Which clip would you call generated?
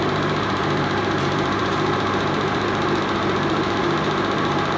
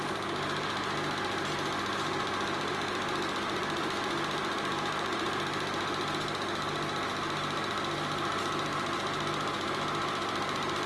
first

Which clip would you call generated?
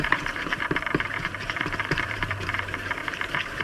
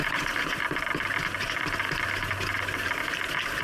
first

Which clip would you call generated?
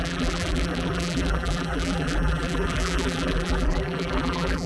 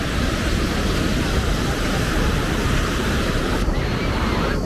first